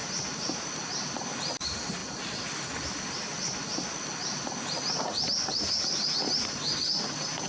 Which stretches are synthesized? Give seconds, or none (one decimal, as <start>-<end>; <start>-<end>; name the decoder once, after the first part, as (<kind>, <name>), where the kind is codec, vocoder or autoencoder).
0.0-0.7 (vocoder, BigVGAN v2)